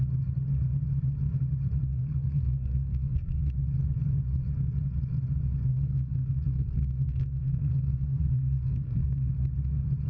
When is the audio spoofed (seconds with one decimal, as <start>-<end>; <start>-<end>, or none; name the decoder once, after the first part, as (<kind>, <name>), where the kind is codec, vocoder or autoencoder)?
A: 1.9-3.4 (codec, SNAC); 5.7-9.3